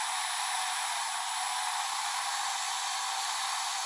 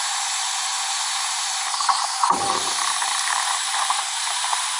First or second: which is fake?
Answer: second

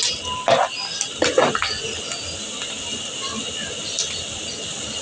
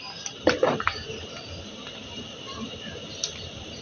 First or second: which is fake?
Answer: second